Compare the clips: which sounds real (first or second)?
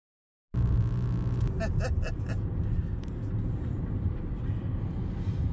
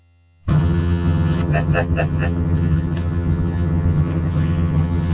first